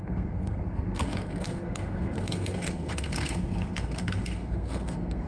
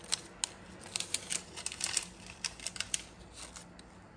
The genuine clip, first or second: second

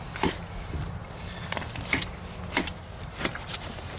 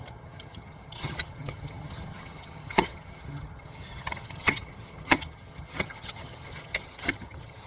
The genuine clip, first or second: first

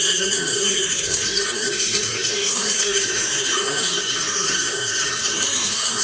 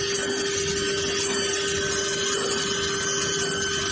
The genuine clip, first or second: second